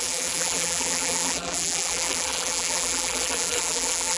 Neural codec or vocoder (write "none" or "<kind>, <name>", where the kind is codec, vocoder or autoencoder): vocoder, BigVGAN v2